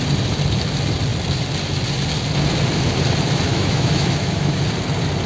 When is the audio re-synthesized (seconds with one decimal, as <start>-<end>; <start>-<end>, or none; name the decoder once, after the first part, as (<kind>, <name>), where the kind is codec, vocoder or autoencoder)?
3.5-4.6 (autoencoder, DAC-VAE)